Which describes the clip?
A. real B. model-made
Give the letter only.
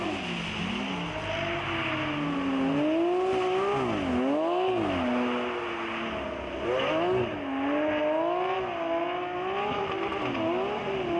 A